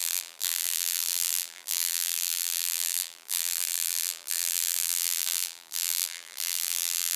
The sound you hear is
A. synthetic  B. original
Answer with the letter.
A